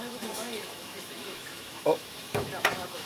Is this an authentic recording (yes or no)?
no